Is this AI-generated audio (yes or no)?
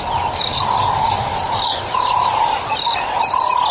no